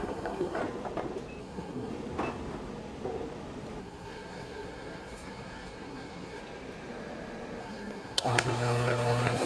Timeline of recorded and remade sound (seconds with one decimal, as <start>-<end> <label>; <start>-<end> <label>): 0.0-0.6 remade; 0.6-1.4 recorded; 1.4-1.9 remade; 1.9-3.8 recorded; 3.8-6.4 remade; 6.4-7.6 recorded; 7.6-9.5 remade